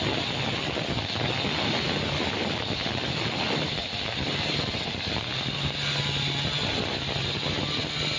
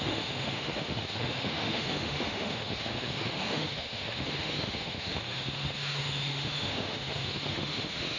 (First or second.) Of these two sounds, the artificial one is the second